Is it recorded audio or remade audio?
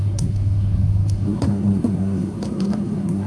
remade